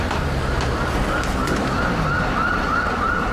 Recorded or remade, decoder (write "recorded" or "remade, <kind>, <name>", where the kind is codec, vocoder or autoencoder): remade, vocoder, BigVGAN v2